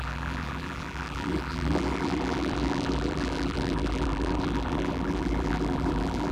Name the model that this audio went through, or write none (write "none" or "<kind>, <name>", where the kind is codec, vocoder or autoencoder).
vocoder, BigVGAN v2